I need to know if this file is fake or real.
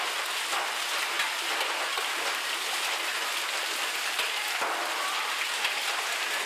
real